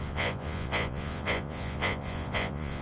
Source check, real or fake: fake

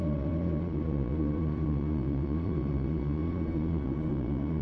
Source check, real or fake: fake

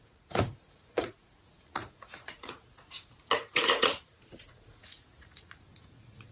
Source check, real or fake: fake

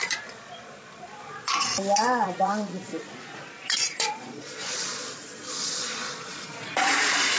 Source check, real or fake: fake